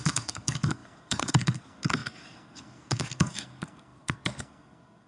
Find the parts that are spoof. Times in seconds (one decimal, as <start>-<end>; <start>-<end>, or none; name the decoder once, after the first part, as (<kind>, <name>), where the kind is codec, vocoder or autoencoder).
0.0-5.1 (codec, SNAC)